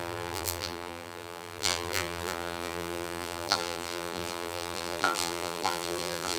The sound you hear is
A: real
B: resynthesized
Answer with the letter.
B